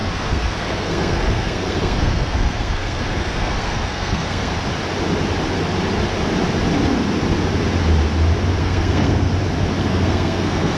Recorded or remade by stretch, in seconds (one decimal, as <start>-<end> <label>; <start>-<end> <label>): 0.0-4.5 remade; 4.5-8.6 recorded; 8.6-9.3 remade; 9.3-9.8 recorded; 9.8-10.8 remade